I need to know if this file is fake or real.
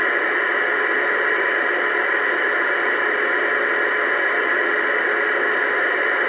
real